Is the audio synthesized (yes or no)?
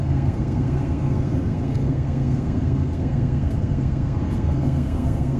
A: yes